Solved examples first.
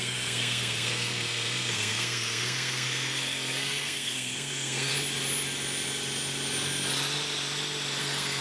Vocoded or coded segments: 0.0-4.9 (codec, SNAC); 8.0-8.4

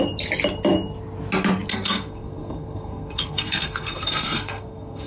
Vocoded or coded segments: 1.7-5.1 (codec, SNAC)

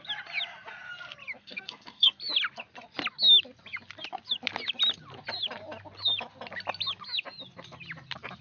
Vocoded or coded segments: 1.4-2.2 (codec, SNAC)

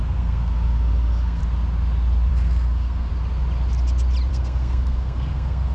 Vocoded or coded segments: 0.0-1.4 (codec, SNAC); 2.3-3.1; 4.3-5.7